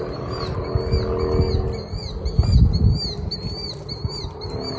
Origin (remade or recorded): recorded